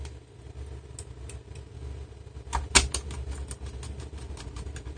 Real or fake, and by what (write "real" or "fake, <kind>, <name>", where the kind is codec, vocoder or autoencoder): real